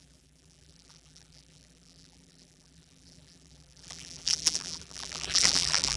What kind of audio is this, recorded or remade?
remade